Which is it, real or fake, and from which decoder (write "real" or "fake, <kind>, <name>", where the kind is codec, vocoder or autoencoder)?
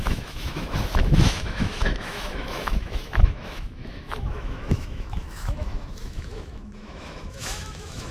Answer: fake, autoencoder, DAC-VAE